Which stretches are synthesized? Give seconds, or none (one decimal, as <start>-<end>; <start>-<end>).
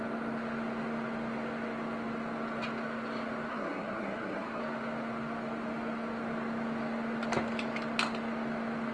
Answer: 3.5-4.6